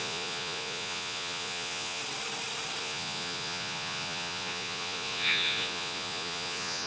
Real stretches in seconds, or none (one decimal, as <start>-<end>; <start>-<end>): 2.0-2.8